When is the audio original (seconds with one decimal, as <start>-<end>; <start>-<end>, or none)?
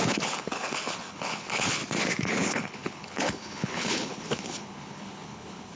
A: 1.8-2.3